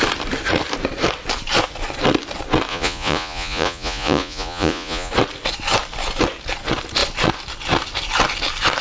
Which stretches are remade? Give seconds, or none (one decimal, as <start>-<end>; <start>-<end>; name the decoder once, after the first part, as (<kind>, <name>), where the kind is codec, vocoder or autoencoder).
2.7-5.1 (vocoder, Vocos)